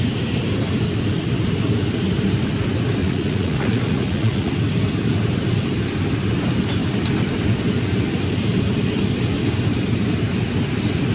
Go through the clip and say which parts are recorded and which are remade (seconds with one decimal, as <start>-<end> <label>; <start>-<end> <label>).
0.0-3.0 recorded; 3.0-4.5 remade; 4.5-11.1 recorded